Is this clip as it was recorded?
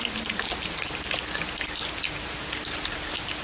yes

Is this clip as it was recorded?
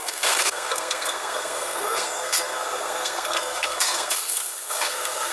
no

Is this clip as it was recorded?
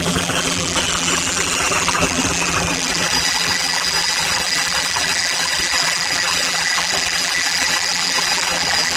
no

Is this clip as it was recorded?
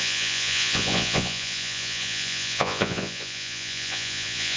no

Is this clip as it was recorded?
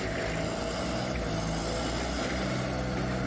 yes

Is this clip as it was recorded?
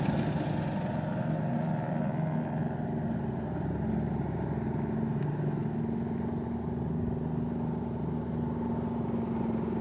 yes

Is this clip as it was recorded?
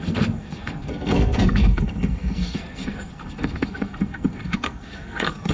no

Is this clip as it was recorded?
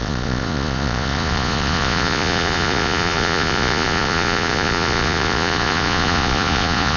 no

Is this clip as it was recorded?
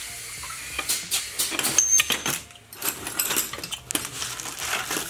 yes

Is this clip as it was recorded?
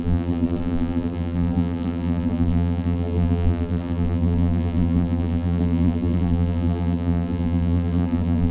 no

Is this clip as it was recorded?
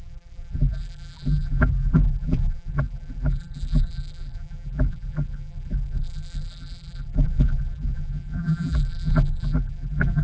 no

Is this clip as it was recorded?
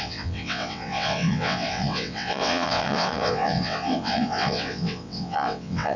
no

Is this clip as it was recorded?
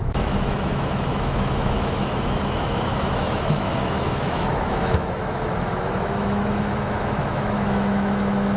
no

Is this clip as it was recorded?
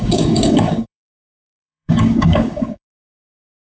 no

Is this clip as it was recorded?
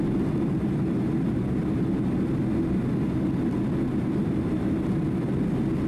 yes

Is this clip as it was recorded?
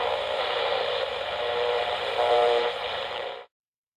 no